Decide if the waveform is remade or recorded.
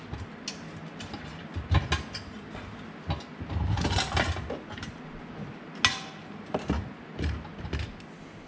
recorded